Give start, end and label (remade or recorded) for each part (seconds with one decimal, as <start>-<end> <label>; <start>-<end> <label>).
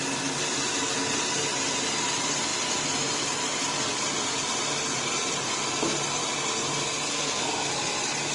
0.0-7.1 recorded; 7.1-7.7 remade; 7.7-8.3 recorded